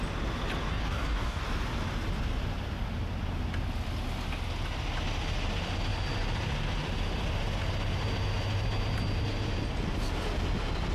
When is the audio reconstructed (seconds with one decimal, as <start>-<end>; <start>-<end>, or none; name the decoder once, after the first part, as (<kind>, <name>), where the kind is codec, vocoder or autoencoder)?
0.7-1.4 (codec, DAC)